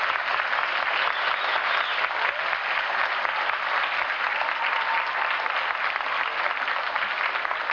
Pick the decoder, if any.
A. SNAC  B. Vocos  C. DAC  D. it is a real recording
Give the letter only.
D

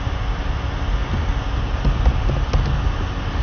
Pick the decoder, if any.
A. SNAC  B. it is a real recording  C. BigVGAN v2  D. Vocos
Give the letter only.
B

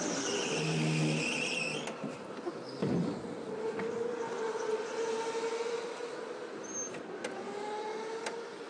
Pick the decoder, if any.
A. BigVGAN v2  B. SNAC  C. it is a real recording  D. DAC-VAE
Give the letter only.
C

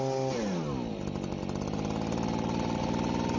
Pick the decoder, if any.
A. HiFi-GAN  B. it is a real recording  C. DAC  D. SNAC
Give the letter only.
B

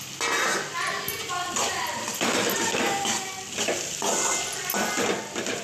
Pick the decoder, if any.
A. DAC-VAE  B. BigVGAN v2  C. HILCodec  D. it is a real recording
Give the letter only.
D